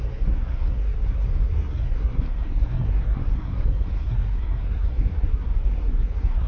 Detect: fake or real fake